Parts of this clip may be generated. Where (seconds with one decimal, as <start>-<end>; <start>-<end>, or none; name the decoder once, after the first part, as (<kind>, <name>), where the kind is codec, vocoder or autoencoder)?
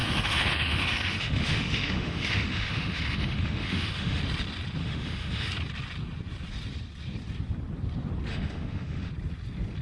0.0-4.2 (autoencoder, DAC-VAE); 4.8-5.5; 8.3-9.1